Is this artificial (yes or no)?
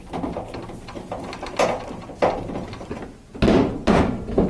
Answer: no